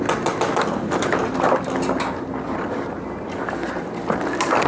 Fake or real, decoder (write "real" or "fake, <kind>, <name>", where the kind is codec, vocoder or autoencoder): real